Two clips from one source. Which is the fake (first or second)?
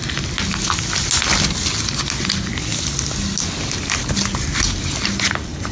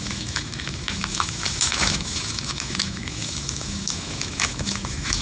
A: second